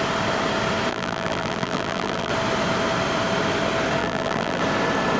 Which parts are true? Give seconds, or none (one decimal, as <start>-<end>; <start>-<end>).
0.0-0.9; 2.3-4.0; 4.6-5.2